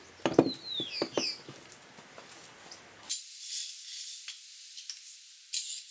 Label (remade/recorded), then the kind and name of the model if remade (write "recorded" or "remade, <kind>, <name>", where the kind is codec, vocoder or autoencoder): recorded